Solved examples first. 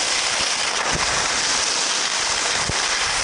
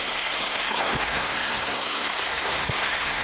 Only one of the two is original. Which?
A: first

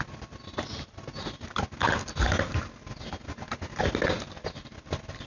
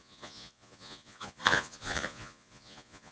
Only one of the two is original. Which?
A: first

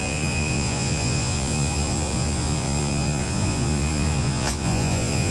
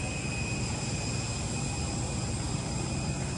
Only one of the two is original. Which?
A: second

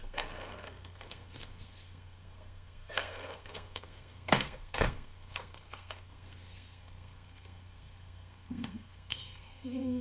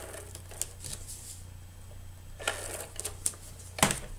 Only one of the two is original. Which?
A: second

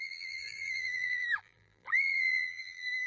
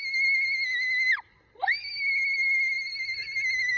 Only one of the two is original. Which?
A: second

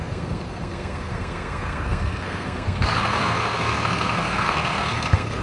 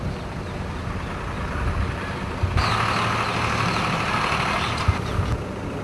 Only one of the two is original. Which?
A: second